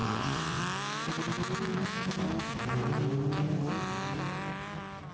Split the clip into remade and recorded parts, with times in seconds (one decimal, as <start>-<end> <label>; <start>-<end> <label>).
0.0-0.6 remade; 0.6-5.1 recorded